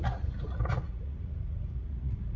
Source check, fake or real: fake